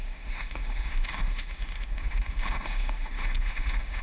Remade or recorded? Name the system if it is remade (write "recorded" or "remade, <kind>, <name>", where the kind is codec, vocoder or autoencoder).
remade, autoencoder, DAC-VAE